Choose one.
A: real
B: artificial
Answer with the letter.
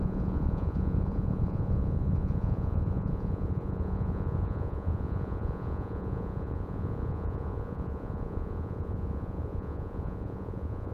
B